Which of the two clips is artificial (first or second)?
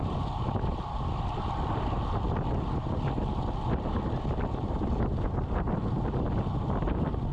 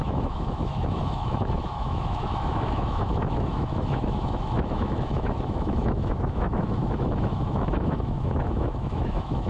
second